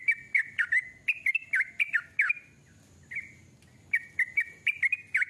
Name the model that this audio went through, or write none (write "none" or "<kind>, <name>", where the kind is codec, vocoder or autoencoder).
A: none